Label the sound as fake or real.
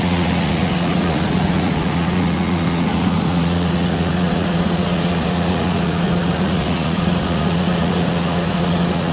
fake